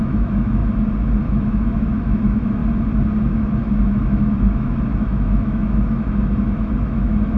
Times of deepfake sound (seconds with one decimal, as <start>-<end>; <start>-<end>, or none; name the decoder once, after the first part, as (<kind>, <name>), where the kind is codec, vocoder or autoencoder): 0.0-0.6 (autoencoder, DAC-VAE); 1.2-2.6; 3.2-7.4